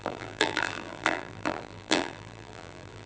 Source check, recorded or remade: remade